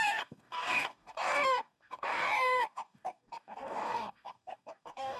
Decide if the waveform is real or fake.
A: fake